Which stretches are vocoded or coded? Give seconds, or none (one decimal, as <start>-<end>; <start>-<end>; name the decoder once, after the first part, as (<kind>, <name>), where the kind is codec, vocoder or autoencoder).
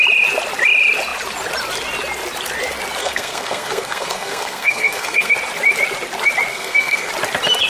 3.0-5.3 (codec, SNAC); 6.5-7.1